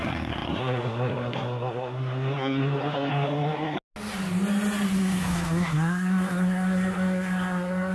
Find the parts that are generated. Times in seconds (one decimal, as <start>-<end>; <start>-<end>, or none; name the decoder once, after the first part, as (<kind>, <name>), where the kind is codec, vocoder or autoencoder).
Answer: 0.0-3.8 (codec, SNAC); 5.0-7.9